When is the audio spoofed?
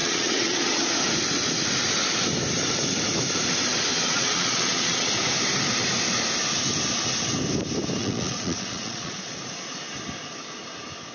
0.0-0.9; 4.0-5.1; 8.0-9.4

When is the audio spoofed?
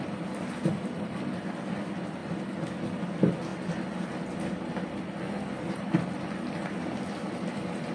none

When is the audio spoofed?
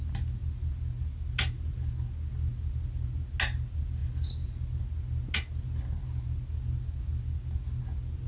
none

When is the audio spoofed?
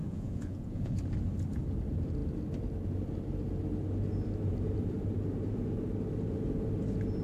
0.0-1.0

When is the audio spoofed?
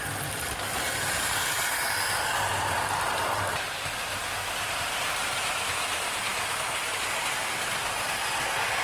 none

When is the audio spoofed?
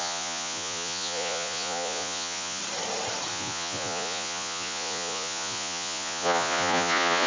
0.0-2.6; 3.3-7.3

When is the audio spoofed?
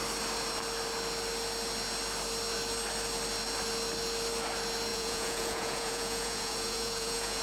4.9-7.4